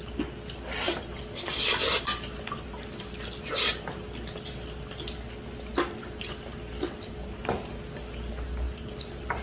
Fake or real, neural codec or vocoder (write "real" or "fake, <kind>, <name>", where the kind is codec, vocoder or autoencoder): real